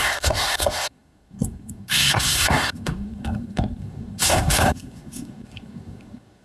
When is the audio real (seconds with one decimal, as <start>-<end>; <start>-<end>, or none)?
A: none